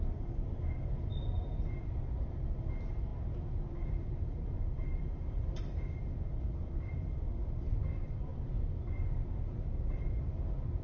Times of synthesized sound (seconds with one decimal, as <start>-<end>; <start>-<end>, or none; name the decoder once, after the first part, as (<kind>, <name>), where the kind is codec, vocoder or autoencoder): none